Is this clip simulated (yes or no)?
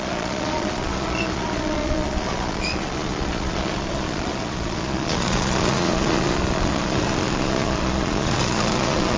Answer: yes